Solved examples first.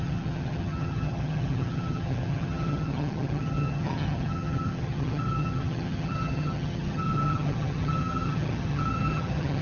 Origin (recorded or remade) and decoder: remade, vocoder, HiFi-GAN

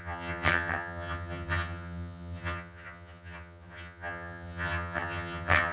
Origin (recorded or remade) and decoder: remade, vocoder, HiFi-GAN